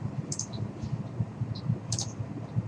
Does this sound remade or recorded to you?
remade